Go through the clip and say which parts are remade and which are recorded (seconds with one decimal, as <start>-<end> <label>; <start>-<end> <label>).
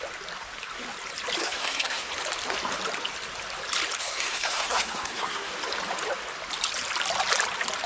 0.0-1.4 recorded; 1.4-2.1 remade; 2.1-4.0 recorded; 4.0-5.5 remade; 5.5-7.9 recorded